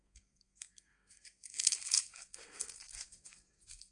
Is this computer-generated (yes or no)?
yes